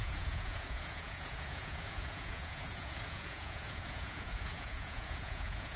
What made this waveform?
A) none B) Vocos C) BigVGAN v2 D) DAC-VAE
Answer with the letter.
B